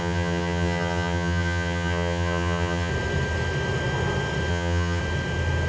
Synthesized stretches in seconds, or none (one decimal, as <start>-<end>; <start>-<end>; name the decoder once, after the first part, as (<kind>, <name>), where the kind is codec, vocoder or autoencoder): 0.0-2.9 (vocoder, HiFi-GAN); 4.5-5.0